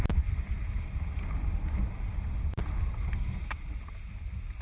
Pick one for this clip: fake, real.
real